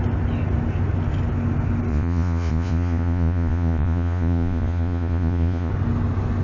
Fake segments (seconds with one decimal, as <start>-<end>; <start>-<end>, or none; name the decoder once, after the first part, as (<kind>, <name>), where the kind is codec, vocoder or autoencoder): 1.9-5.7 (vocoder, Vocos)